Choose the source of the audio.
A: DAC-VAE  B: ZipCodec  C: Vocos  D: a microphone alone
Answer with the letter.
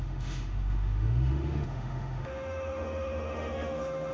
A